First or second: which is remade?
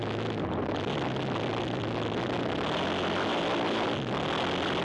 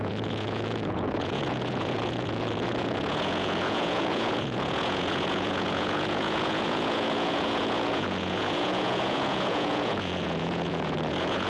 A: second